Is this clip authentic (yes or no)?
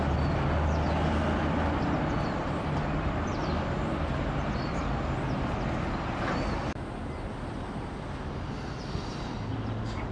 yes